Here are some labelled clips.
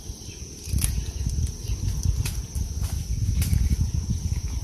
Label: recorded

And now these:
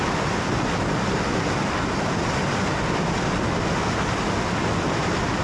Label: recorded